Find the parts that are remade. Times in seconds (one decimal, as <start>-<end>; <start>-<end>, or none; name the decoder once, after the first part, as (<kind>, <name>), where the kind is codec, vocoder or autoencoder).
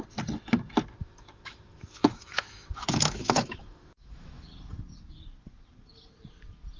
1.0-4.5 (autoencoder, DAC-VAE)